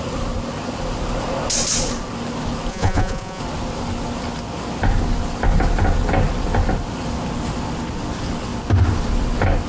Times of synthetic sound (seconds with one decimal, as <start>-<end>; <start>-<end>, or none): 2.7-3.4